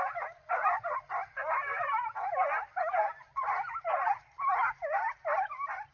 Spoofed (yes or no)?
no